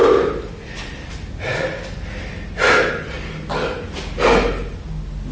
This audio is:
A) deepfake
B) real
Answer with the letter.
B